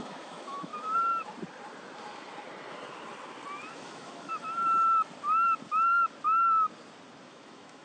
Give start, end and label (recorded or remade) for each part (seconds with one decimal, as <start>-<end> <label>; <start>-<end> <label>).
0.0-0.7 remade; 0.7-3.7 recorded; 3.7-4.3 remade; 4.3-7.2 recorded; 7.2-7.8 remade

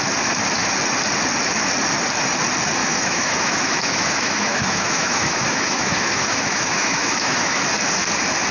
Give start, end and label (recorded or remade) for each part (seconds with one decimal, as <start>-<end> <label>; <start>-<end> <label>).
0.0-2.8 recorded; 2.8-7.6 remade; 7.6-8.5 recorded

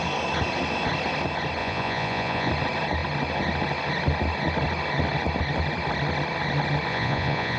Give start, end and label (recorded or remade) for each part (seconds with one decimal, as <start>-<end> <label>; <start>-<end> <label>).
0.0-1.6 recorded; 1.6-2.5 remade; 2.5-6.9 recorded; 6.9-7.6 remade

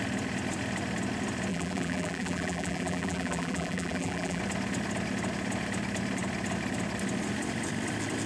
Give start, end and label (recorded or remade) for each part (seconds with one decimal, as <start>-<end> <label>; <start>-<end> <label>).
0.0-1.5 recorded; 1.5-4.4 remade; 4.4-8.3 recorded

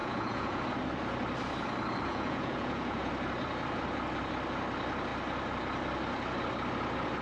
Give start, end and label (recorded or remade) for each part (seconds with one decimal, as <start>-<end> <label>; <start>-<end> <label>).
0.0-0.6 remade; 0.6-2.1 recorded; 2.1-3.1 remade; 3.1-7.2 recorded